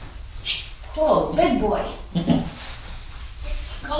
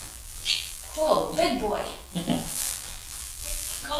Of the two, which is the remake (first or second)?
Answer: second